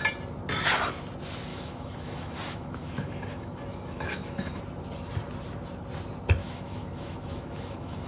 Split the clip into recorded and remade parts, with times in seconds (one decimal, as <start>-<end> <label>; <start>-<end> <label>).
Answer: 0.0-1.5 recorded; 1.5-4.6 remade; 4.6-6.4 recorded; 6.4-8.1 remade